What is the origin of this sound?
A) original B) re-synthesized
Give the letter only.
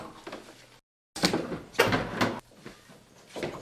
A